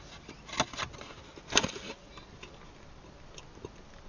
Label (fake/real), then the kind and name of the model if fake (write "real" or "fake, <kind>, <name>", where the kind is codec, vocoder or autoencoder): real